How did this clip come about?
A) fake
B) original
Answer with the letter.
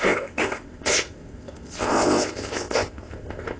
A